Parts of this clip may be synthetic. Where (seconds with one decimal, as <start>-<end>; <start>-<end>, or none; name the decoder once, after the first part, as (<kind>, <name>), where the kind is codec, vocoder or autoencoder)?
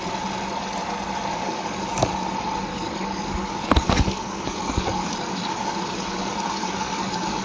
1.3-2.1 (codec, DAC); 2.7-7.4